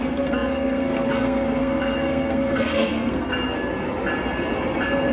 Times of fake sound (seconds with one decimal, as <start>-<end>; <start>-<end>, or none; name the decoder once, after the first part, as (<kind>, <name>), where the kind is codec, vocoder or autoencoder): 0.0-3.3 (codec, SNAC)